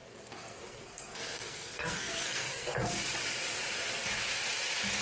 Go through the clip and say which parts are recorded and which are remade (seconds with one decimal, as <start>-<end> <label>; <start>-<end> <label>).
0.0-3.0 remade; 3.0-5.0 recorded